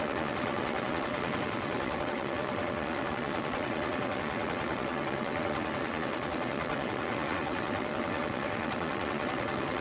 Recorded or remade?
remade